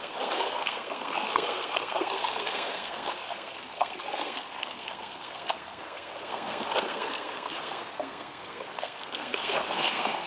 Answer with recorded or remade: remade